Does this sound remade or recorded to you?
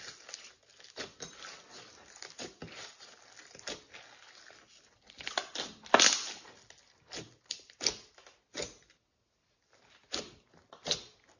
recorded